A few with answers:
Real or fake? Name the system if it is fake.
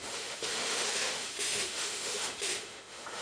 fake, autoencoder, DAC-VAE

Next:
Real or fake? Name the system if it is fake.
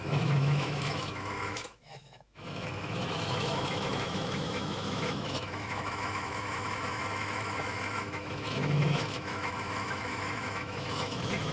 fake, autoencoder, DAC-VAE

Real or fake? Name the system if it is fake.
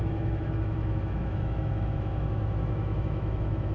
fake, autoencoder, DAC-VAE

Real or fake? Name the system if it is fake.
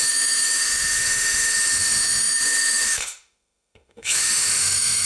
fake, autoencoder, DAC-VAE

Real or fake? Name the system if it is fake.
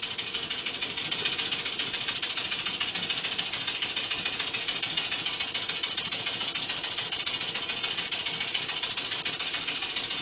real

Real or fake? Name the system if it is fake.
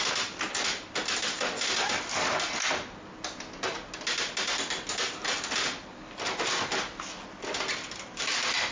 real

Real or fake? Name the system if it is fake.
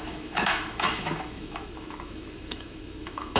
fake, autoencoder, DAC-VAE